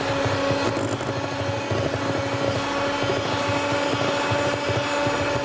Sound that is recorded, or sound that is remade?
recorded